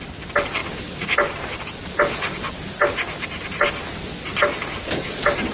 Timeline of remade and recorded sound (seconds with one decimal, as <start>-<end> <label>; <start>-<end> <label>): 0.0-0.6 recorded; 0.6-2.3 remade; 2.3-5.5 recorded